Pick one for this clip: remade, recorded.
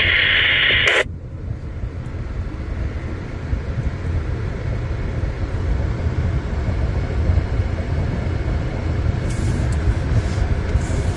recorded